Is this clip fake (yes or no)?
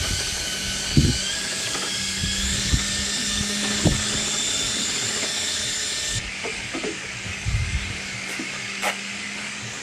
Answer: yes